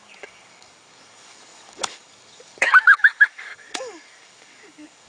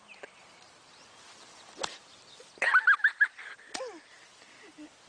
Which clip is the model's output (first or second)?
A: first